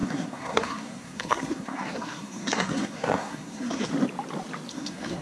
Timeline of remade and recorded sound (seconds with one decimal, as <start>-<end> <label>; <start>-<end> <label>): 0.0-3.9 remade; 3.9-4.7 recorded; 4.7-5.2 remade